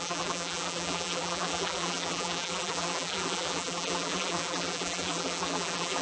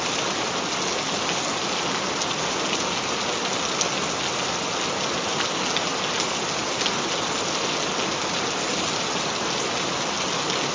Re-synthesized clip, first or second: first